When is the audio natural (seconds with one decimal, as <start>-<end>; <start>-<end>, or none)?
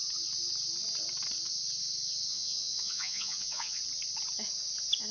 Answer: 0.0-2.3; 3.8-5.1